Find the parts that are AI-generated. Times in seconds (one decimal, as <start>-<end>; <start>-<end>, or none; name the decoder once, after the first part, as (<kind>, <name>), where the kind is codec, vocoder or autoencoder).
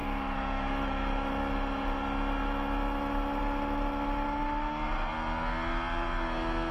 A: 0.0-1.3 (autoencoder, DAC-VAE)